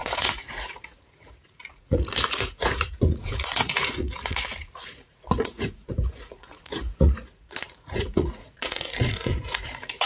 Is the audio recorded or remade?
remade